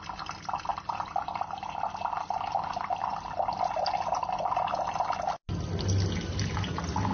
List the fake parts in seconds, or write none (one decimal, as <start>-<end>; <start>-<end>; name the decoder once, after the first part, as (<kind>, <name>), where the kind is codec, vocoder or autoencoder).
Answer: none